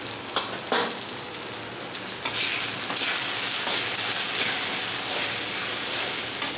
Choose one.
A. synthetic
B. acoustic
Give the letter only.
B